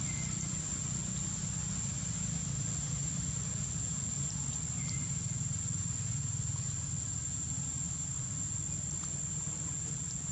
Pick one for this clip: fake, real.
real